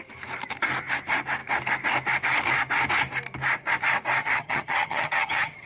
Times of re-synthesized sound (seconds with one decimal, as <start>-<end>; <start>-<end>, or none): 4.2-5.7